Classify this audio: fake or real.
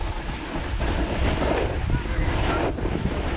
real